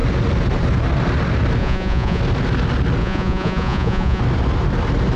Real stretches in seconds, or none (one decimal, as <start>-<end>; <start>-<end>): 0.0-1.6; 2.2-3.0; 4.2-5.2